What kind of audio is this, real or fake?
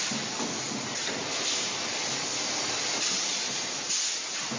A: real